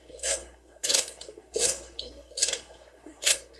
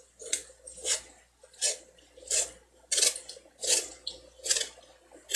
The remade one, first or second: first